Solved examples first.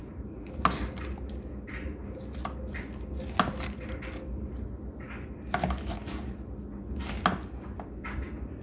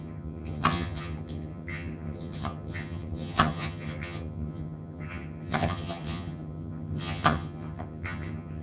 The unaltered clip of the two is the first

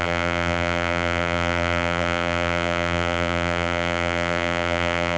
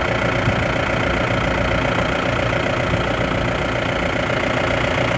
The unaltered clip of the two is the second